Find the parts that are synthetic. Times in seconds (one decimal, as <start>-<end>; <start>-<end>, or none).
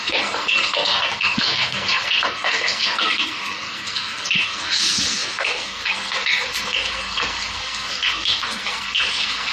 0.0-9.5